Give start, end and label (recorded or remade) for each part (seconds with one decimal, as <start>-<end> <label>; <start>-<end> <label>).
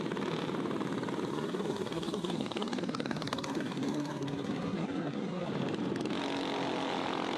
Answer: 0.0-1.3 recorded; 1.3-5.5 remade; 5.5-7.4 recorded